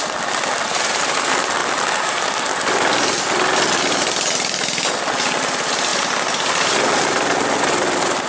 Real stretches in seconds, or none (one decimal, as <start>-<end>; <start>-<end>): 0.0-8.3